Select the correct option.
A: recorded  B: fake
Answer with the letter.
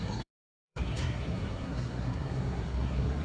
B